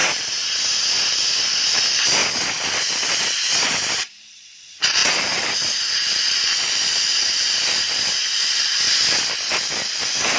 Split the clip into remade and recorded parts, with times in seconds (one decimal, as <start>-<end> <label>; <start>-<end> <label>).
0.0-0.6 recorded; 0.6-2.2 remade; 2.2-3.9 recorded; 3.9-5.0 remade; 5.0-5.7 recorded; 5.7-10.4 remade